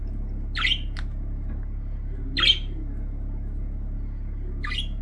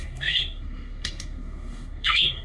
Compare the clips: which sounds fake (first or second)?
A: second